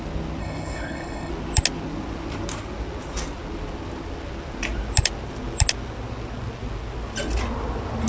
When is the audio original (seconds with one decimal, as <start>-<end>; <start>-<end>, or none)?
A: 0.0-0.4; 1.3-8.1